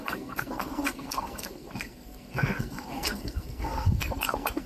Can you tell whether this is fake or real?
fake